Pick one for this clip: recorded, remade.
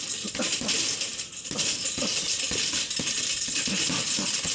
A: recorded